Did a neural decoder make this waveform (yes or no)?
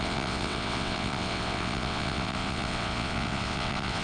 yes